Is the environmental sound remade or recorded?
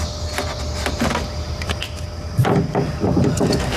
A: recorded